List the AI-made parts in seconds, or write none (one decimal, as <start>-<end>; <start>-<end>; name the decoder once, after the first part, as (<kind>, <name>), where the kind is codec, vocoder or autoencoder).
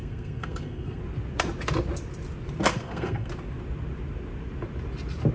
0.0-1.0 (codec, SNAC); 2.7-3.3